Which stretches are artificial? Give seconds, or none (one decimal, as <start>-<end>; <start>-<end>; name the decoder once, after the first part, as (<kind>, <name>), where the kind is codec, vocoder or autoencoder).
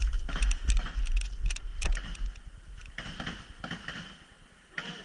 0.0-1.7 (vocoder, BigVGAN v2); 4.6-5.0